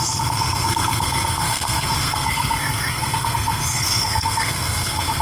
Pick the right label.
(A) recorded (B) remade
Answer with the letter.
B